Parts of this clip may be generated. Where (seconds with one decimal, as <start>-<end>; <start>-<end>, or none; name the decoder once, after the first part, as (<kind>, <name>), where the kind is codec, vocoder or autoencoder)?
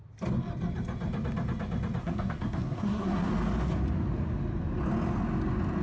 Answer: 2.0-3.3 (codec, SNAC)